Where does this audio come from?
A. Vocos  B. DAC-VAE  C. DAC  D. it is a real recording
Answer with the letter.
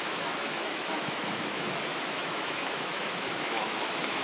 B